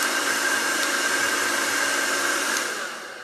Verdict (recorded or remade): recorded